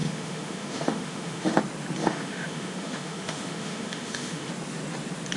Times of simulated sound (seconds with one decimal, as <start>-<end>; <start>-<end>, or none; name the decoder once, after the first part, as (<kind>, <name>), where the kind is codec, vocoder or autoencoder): 0.0-1.6 (autoencoder, DAC-VAE); 2.0-4.5